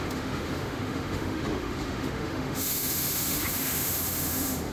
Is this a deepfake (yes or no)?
yes